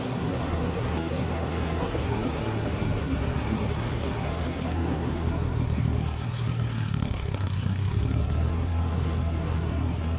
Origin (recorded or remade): remade